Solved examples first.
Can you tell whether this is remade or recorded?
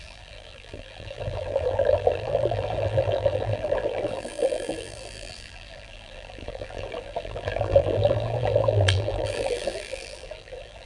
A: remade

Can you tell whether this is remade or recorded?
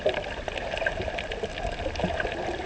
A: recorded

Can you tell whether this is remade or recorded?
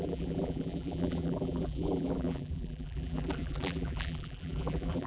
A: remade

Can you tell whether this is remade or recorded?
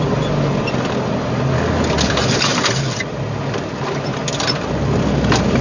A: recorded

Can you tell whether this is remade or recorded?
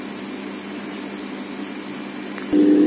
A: recorded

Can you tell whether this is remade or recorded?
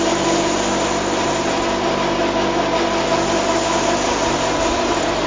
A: recorded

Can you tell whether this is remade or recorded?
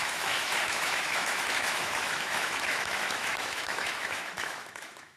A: remade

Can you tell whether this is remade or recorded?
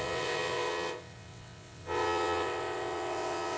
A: remade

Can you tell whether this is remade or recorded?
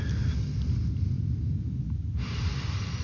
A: recorded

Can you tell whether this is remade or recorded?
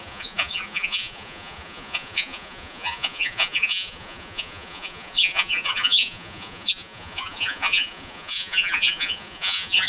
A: remade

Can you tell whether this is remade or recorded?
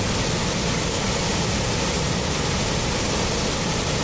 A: recorded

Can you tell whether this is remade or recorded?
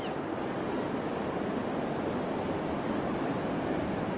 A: recorded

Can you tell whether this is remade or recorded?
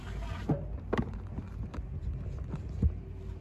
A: recorded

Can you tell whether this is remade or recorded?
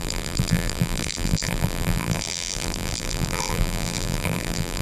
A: remade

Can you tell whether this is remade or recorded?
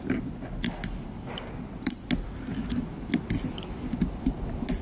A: recorded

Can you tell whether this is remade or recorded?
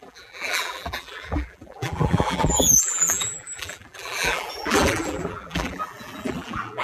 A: remade